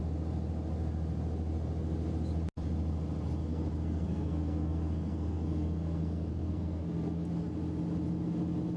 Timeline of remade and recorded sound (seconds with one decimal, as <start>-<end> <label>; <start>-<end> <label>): 0.0-3.4 recorded; 3.4-7.3 remade; 7.3-8.8 recorded